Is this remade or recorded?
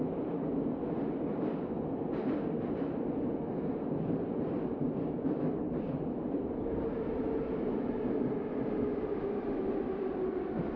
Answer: recorded